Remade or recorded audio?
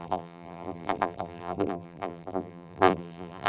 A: remade